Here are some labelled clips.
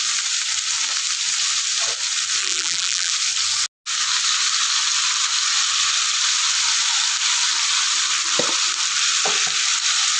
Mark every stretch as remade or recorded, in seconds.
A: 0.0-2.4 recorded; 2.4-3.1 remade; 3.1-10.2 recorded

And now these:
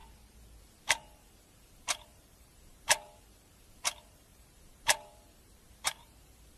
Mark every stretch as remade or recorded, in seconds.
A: 0.0-0.6 recorded; 0.6-6.6 remade

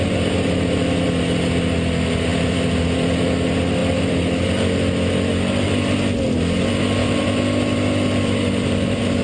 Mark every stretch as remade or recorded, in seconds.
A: 0.0-2.3 recorded; 2.3-3.1 remade; 3.1-7.0 recorded; 7.0-9.2 remade

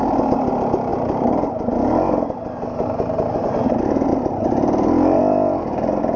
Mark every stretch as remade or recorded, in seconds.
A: 0.0-0.9 recorded; 0.9-1.5 remade; 1.5-4.1 recorded; 4.1-5.2 remade; 5.2-6.2 recorded

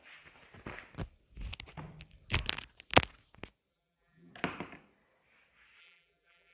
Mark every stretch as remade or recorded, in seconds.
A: 0.0-3.7 recorded; 3.7-4.3 remade; 4.3-5.8 recorded; 5.8-6.5 remade

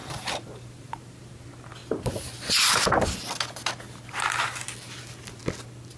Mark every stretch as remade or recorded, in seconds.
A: 0.0-1.3 remade; 1.3-6.0 recorded

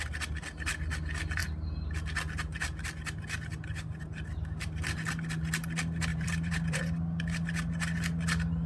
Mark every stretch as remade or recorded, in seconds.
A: 0.0-6.1 recorded; 6.1-6.8 remade; 6.8-8.7 recorded

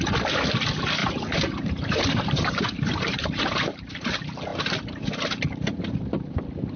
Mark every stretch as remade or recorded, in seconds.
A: 0.0-1.0 recorded; 1.0-3.9 remade; 3.9-6.8 recorded